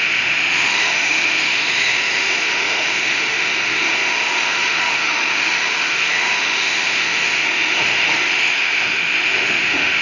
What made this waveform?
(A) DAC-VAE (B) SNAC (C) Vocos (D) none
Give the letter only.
A